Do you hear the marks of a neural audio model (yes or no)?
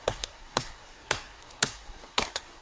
yes